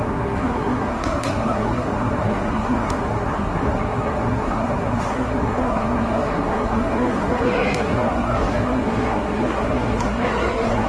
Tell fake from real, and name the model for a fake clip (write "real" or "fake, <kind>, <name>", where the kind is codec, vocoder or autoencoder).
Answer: fake, codec, SNAC